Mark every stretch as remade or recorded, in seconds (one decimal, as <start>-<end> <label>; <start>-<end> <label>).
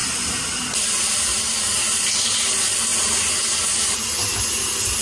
0.0-5.0 recorded